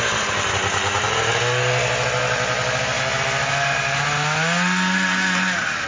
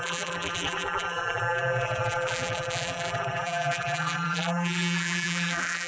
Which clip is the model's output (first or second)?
second